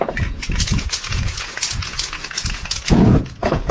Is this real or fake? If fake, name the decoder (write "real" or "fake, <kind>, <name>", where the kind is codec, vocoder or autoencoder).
fake, vocoder, Vocos